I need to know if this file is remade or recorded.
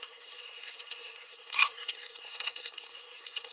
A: remade